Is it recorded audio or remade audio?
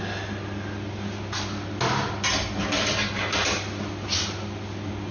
recorded